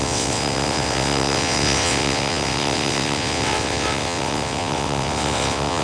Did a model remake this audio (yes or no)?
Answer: yes